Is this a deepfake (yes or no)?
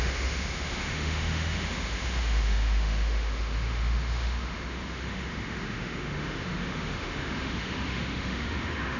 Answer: yes